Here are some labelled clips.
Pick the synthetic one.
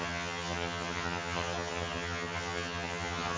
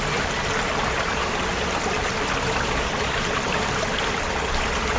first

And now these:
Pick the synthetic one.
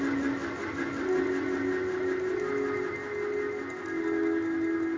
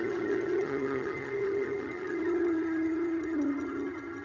second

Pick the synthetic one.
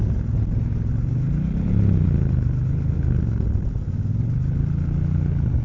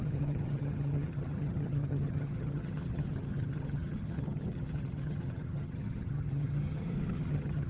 second